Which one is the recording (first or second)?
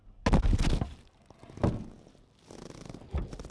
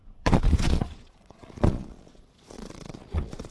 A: first